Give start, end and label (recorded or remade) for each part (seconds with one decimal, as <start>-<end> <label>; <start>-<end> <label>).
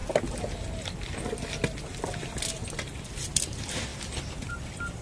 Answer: 0.0-3.0 recorded; 3.0-3.9 remade; 3.9-4.5 recorded; 4.5-5.0 remade